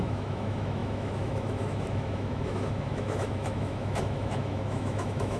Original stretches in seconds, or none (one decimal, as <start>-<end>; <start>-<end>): none